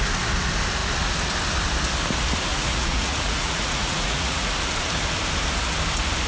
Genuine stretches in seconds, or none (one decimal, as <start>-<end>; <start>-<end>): 0.0-2.5; 4.5-6.3